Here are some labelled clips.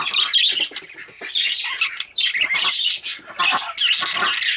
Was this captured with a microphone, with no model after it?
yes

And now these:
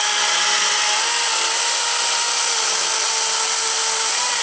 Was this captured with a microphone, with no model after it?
yes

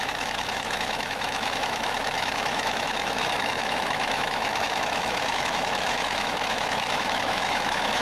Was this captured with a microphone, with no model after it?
no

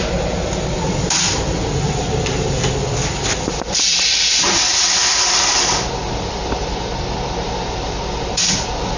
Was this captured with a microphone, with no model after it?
no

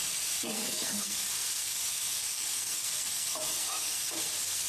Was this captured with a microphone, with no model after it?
no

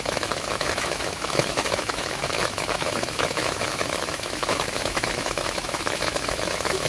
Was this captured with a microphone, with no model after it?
no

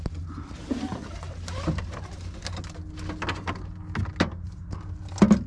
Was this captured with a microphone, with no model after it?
yes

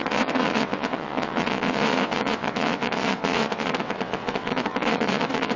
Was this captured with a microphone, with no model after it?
no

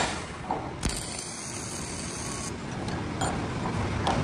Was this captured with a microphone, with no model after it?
yes